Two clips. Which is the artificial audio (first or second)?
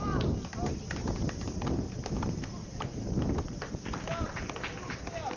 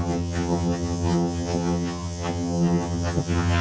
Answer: second